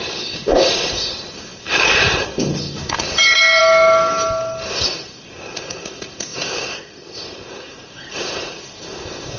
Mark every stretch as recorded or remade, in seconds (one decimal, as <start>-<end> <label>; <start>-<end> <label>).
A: 0.0-9.4 remade